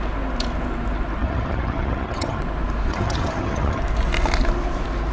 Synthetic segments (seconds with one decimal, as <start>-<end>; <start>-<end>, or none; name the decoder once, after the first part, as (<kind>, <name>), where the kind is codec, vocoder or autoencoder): 1.2-2.4 (vocoder, HiFi-GAN); 2.9-3.8